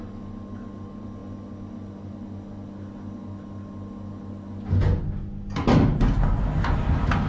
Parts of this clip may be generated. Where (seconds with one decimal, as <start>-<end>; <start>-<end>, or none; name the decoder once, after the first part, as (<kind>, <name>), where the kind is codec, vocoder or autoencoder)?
none